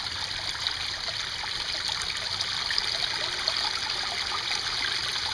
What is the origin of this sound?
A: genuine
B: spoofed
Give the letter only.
A